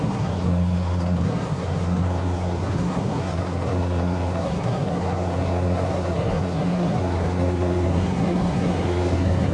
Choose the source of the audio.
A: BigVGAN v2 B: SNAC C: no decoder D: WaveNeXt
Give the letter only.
B